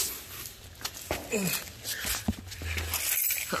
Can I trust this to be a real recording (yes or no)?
yes